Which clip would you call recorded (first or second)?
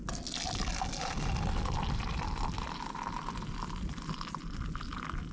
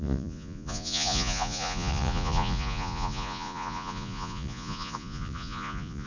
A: first